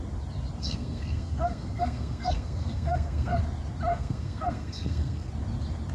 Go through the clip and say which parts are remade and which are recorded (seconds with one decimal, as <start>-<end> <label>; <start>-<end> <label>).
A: 0.0-0.6 recorded; 0.6-3.4 remade; 3.4-3.9 recorded; 3.9-5.3 remade; 5.3-5.9 recorded